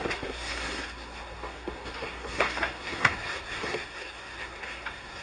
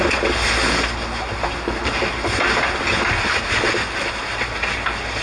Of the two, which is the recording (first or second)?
second